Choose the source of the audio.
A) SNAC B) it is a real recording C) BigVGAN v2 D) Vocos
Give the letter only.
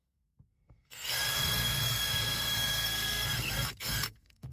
A